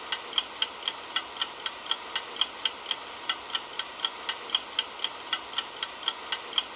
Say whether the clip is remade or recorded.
recorded